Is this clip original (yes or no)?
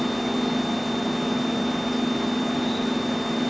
yes